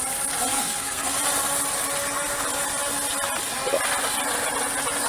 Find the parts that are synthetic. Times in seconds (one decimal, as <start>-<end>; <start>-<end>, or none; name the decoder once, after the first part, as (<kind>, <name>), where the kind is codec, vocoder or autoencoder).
0.5-1.2 (codec, SNAC)